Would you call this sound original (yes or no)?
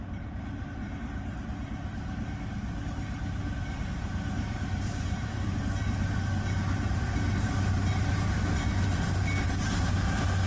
yes